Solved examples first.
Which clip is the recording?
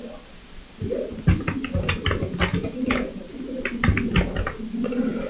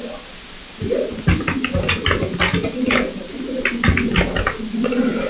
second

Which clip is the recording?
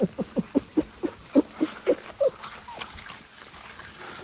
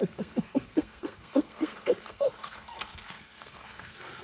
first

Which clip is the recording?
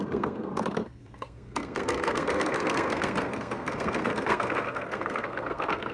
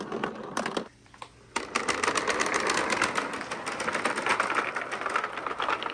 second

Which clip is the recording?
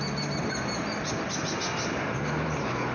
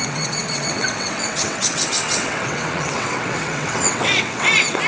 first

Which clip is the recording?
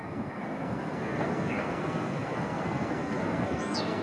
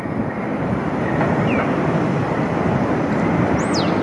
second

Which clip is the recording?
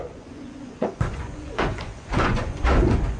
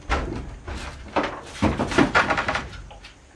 second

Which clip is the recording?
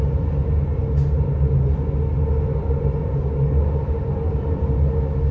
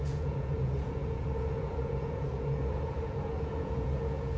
first